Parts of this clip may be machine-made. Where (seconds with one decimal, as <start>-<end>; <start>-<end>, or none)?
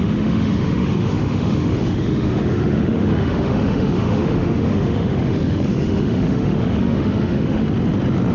0.0-7.6